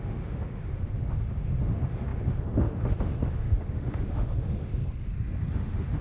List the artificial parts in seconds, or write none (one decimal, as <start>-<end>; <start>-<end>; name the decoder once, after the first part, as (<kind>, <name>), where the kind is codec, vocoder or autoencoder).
0.0-4.8 (autoencoder, DAC-VAE); 5.5-6.0